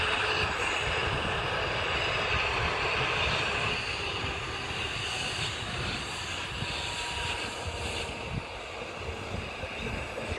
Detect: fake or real real